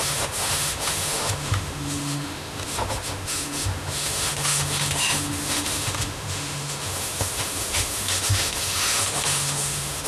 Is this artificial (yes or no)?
yes